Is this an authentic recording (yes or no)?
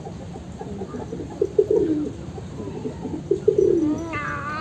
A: yes